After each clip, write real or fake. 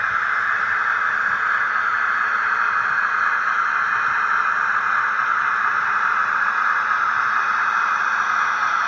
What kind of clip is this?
fake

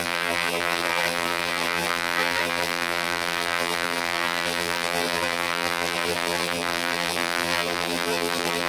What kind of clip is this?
fake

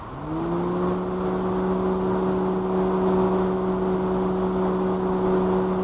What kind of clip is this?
real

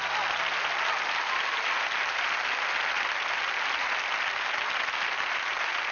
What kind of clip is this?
real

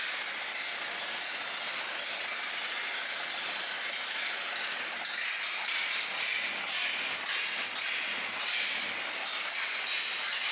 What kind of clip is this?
real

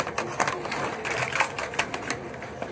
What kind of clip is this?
real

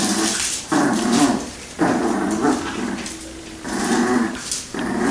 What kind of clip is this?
fake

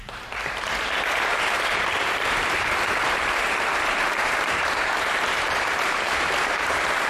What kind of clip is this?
fake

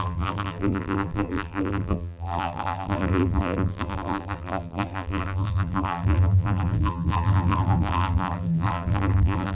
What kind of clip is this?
fake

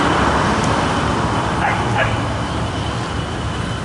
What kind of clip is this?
fake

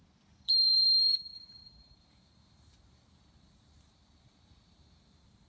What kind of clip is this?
fake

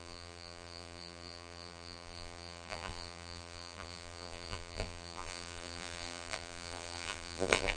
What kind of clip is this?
fake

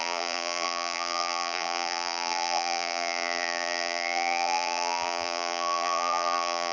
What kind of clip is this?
fake